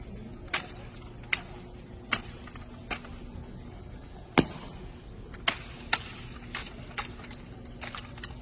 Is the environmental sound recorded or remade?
recorded